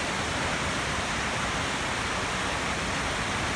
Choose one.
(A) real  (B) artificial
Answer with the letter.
A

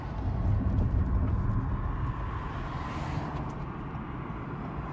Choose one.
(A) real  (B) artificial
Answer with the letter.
A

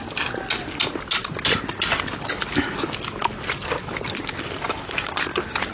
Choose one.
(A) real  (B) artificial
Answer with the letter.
A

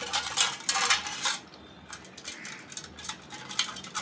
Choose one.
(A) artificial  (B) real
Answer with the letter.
B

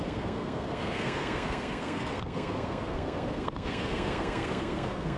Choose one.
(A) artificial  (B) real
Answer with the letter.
A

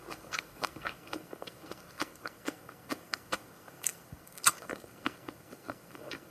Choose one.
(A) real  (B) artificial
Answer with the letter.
B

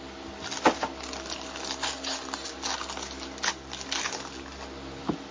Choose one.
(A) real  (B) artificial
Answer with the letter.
A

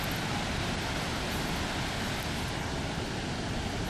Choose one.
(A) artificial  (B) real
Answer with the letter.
B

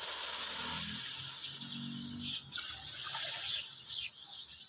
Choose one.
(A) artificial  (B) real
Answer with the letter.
B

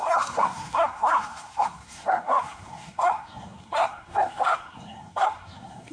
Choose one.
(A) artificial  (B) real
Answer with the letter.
A